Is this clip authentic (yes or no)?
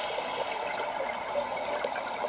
yes